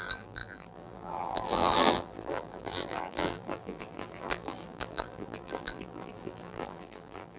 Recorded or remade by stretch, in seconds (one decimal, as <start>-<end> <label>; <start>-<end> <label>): 0.0-7.4 remade